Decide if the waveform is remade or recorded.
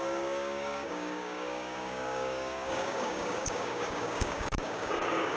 remade